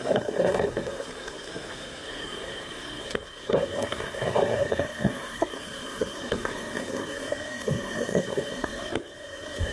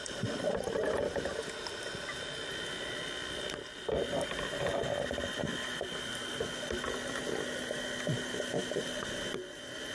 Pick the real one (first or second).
second